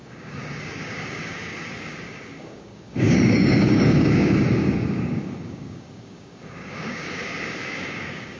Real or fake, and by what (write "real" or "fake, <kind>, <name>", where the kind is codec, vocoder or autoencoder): fake, codec, DAC